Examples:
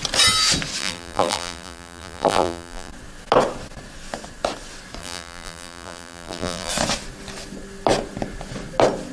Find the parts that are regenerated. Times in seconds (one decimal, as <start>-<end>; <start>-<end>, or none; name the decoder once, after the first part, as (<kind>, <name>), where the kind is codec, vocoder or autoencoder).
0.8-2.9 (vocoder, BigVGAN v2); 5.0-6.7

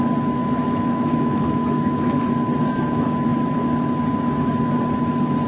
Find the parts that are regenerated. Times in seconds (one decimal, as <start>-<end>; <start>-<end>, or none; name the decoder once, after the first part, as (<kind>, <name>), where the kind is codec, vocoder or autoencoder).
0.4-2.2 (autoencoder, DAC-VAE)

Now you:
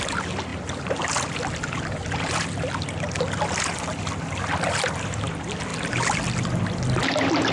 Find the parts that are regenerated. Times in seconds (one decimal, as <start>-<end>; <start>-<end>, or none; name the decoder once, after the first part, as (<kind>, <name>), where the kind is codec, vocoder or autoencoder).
none

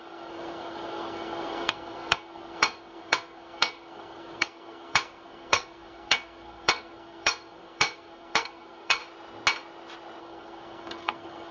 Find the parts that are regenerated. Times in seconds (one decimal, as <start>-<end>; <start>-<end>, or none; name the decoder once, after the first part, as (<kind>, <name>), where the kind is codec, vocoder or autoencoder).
0.0-9.0 (codec, SNAC); 10.2-11.5